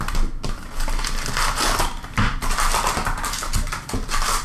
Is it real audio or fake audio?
real